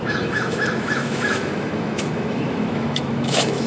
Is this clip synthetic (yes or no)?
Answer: yes